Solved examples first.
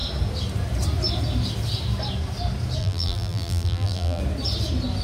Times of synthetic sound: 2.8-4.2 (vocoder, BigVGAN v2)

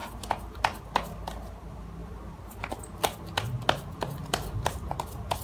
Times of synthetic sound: 0.0-0.8 (vocoder, BigVGAN v2); 2.0-2.8; 4.2-5.4